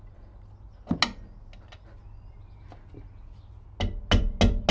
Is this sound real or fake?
real